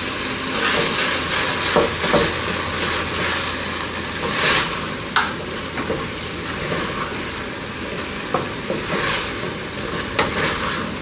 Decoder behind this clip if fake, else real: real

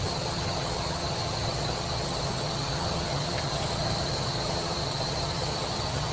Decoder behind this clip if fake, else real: fake, vocoder, HiFi-GAN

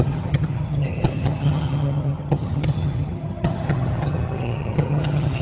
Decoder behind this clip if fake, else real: fake, vocoder, HiFi-GAN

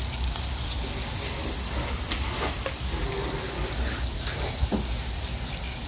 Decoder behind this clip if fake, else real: real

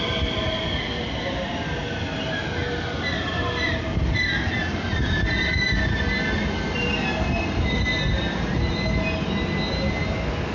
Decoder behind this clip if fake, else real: real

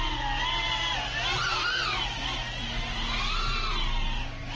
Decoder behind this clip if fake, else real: real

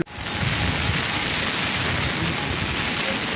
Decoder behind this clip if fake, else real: real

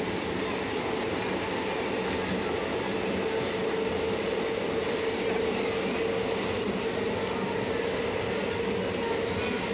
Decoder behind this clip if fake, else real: real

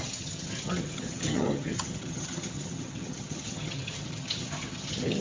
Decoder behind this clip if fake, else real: fake, vocoder, HiFi-GAN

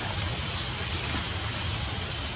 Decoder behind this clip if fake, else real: real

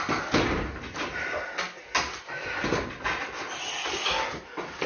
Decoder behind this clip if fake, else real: real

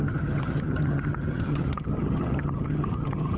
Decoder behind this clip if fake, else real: fake, vocoder, HiFi-GAN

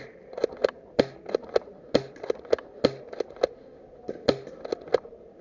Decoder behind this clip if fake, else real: real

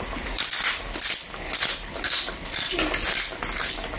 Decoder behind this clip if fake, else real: real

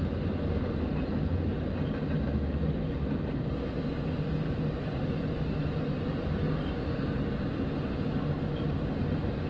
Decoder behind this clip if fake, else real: real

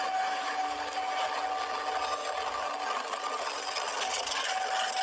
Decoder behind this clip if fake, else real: real